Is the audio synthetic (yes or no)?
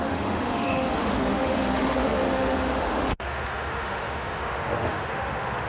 yes